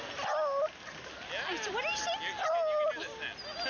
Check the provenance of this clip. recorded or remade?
recorded